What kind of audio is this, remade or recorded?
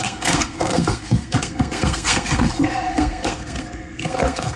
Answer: remade